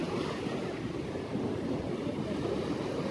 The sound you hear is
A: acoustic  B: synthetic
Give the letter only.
A